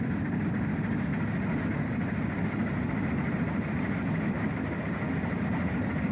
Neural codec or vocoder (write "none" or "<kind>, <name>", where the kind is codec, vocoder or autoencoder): none